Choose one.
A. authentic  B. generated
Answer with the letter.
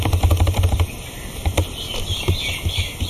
B